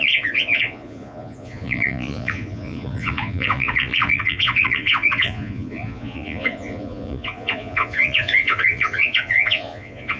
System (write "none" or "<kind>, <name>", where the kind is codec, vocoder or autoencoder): vocoder, Vocos